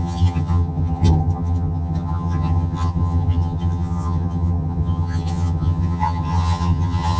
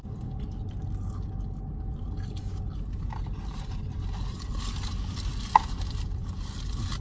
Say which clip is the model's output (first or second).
first